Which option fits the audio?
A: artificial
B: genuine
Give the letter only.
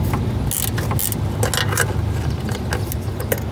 B